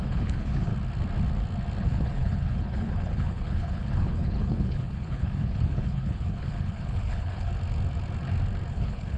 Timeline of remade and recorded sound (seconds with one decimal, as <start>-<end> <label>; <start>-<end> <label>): 0.0-0.7 remade; 0.7-1.8 recorded; 1.8-7.5 remade; 7.5-8.7 recorded; 8.7-9.2 remade